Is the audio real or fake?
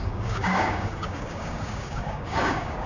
fake